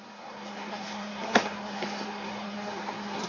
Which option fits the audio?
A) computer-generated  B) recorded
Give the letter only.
A